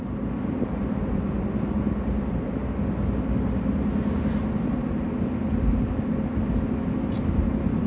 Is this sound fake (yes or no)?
no